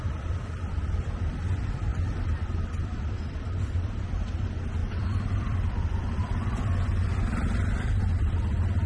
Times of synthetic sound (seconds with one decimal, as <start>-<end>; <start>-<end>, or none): 0.0-8.1

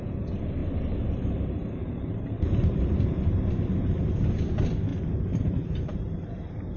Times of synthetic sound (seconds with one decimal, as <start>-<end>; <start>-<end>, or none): 1.8-4.1; 4.9-6.8

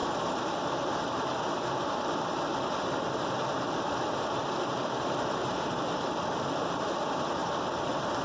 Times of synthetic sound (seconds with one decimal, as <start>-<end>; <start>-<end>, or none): 4.4-6.5